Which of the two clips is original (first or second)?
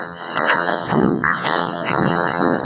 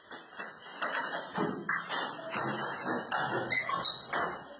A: second